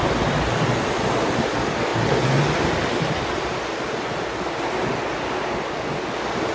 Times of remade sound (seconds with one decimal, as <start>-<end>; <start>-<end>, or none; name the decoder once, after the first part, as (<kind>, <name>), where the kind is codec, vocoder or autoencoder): none